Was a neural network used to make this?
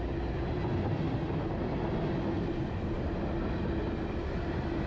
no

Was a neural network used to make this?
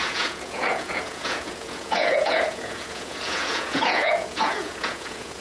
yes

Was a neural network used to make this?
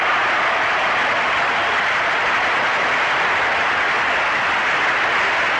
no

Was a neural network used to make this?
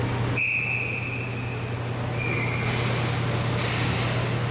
no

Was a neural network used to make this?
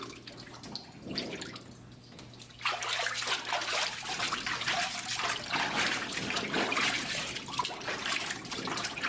no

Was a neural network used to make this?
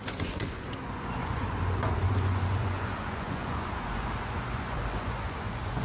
yes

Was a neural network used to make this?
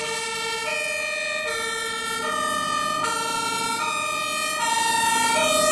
no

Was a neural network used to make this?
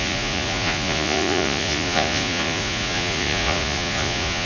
yes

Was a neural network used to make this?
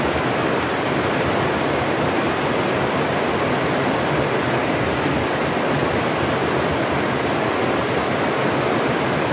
no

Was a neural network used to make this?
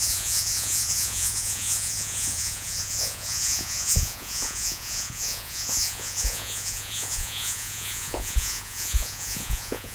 yes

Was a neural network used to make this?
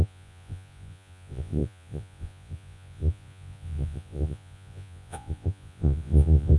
yes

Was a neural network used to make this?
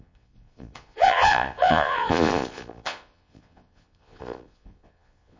yes